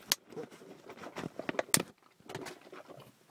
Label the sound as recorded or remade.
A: recorded